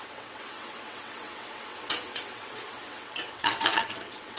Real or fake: fake